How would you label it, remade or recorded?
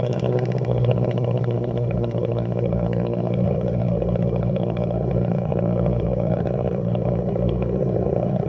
remade